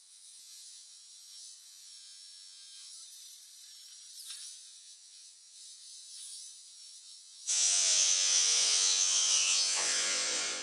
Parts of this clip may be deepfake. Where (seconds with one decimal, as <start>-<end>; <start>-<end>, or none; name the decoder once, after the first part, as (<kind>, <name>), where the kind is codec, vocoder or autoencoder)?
0.0-3.0 (vocoder, Vocos); 4.4-10.6

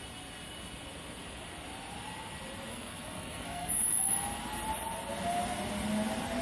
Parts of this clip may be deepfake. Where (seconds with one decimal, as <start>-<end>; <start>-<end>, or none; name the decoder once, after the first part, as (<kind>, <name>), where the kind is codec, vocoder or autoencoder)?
2.7-3.7 (codec, SNAC)

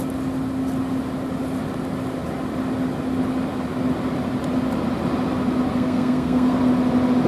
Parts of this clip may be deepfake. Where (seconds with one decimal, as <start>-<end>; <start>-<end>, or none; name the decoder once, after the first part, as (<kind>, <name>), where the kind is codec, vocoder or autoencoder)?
5.7-6.6 (codec, SNAC)

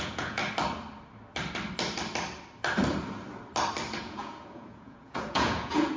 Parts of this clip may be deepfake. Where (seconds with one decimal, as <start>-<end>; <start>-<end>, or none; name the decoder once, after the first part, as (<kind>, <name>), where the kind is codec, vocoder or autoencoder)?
0.0-0.4 (vocoder, Vocos); 4.0-6.0

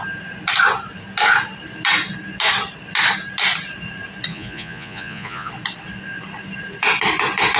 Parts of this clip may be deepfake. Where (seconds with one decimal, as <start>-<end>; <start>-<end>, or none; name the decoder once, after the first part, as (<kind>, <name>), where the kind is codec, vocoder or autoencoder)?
4.3-5.5 (vocoder, Vocos)

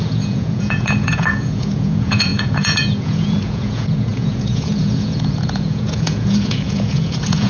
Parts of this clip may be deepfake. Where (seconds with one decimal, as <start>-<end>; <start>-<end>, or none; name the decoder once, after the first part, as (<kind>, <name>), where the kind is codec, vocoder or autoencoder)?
0.0-7.5 (vocoder, Vocos)

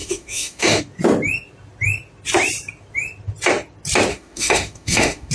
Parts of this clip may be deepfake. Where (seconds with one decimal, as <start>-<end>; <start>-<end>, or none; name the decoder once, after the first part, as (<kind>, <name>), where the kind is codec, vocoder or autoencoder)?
0.0-0.8 (autoencoder, DAC-VAE); 4.1-5.3